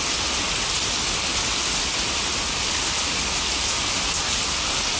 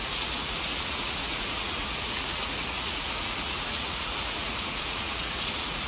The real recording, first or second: first